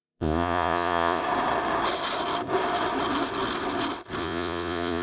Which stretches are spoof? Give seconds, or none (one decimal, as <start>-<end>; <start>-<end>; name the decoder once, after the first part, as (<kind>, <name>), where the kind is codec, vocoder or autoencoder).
0.0-1.2 (vocoder, Vocos); 4.2-5.0